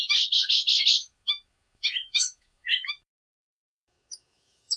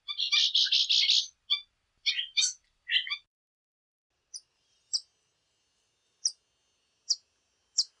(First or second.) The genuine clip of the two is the second